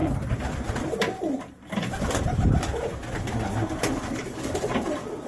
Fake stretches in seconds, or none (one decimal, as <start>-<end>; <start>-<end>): 1.4-3.0; 4.4-5.3